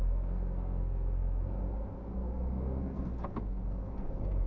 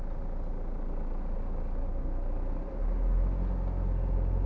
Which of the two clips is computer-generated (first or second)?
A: first